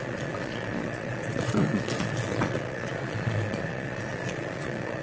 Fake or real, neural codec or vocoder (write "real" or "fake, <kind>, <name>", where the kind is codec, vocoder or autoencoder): fake, vocoder, Vocos